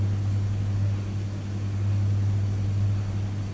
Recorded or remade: recorded